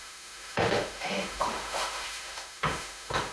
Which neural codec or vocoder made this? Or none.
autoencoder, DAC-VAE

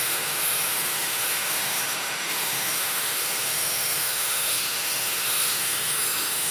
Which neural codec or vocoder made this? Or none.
autoencoder, DAC-VAE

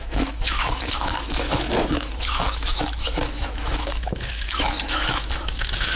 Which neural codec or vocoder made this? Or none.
autoencoder, DAC-VAE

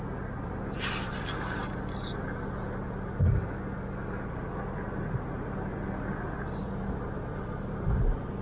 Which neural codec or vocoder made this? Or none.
none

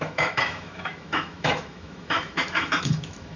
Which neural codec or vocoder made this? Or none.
autoencoder, DAC-VAE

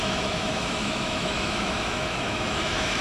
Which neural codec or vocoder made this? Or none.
autoencoder, DAC-VAE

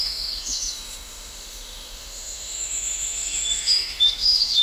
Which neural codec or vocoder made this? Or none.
autoencoder, DAC-VAE